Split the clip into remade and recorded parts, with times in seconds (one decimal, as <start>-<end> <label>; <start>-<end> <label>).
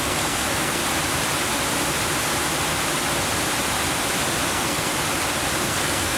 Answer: 0.0-0.8 remade; 0.8-4.5 recorded; 4.5-4.9 remade; 4.9-5.6 recorded; 5.6-6.2 remade